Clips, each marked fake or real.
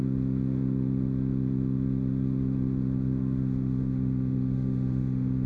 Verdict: fake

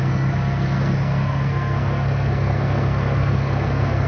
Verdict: fake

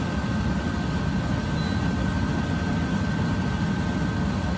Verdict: real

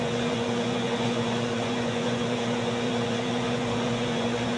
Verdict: fake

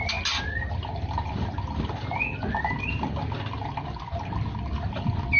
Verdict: real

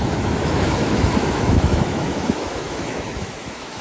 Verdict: fake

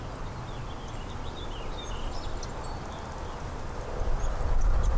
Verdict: real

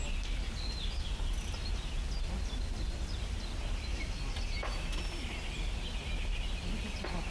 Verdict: real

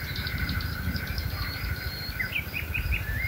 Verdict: real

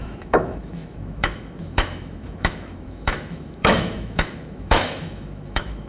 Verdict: fake